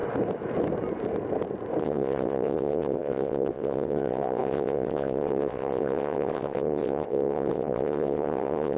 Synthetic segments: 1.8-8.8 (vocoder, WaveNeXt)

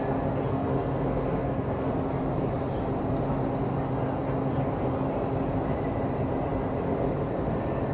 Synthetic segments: 0.5-1.9 (codec, SNAC)

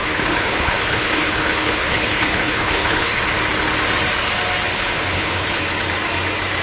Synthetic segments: 0.0-3.2 (codec, HILCodec); 4.7-5.6